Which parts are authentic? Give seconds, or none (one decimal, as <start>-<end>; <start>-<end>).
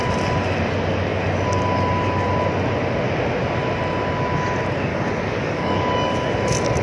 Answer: 0.0-4.9; 6.1-6.8